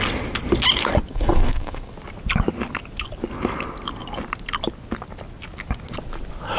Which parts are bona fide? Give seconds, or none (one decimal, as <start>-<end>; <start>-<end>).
0.0-1.1; 1.9-6.6